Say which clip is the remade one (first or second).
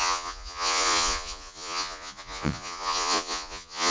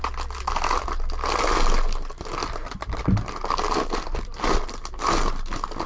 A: first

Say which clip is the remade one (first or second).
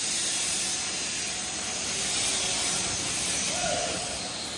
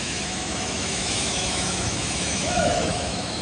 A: second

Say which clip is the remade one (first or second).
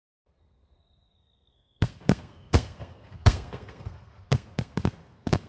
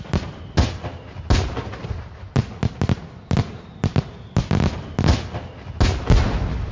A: first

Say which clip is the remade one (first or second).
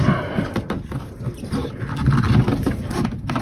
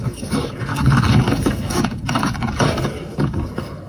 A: second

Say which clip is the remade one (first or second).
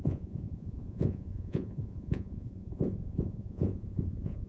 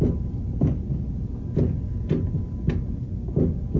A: first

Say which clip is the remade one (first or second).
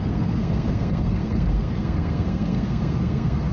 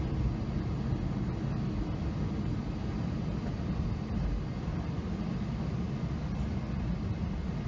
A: first